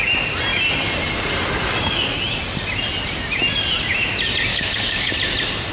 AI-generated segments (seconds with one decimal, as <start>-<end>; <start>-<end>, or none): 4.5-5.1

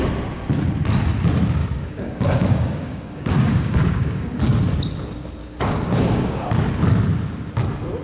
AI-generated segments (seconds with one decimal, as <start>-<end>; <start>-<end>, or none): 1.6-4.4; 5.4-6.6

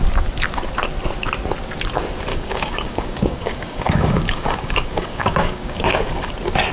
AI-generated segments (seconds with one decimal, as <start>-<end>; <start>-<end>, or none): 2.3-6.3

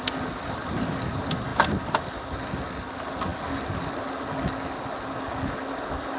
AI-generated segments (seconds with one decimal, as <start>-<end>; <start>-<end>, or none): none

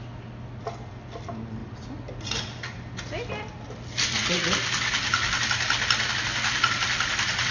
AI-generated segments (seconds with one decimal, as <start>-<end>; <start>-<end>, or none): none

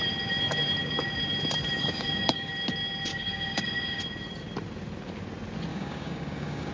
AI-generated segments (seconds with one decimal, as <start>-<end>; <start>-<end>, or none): 1.8-2.5; 3.1-4.0; 5.7-6.7